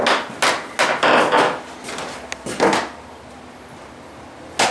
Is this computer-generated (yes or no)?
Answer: no